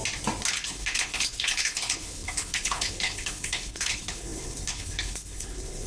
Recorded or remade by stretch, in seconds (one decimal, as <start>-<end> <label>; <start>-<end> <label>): 0.0-0.5 recorded; 0.5-5.9 remade